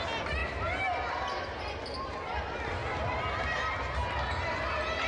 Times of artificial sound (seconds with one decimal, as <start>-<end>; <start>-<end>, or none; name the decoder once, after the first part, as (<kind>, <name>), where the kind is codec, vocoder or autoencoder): none